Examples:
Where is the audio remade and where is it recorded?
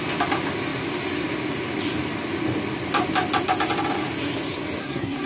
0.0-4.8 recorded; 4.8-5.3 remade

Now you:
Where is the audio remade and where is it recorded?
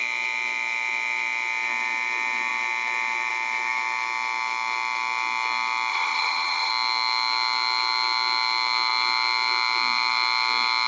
0.0-5.9 recorded; 5.9-6.7 remade; 6.7-10.9 recorded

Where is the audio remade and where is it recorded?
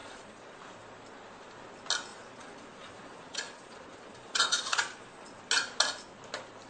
0.0-0.6 remade; 0.6-2.1 recorded; 2.1-5.4 remade; 5.4-6.7 recorded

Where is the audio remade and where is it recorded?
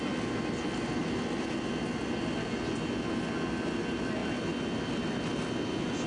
0.0-6.1 recorded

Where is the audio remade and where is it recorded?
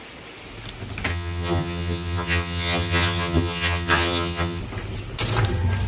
0.0-1.1 recorded; 1.1-4.6 remade; 4.6-5.9 recorded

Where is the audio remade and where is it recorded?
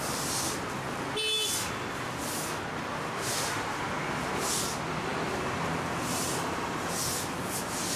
0.0-8.0 recorded